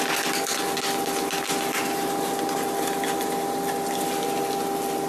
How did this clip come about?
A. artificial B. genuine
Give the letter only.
B